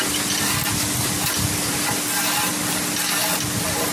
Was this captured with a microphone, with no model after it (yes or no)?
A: yes